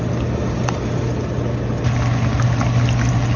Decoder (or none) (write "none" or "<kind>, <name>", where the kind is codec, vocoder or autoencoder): none